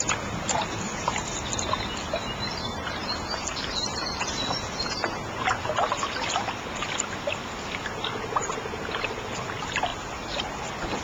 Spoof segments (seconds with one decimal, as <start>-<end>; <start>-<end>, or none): 9.9-10.4